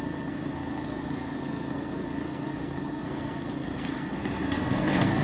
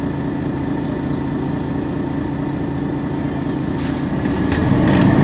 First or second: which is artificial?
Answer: first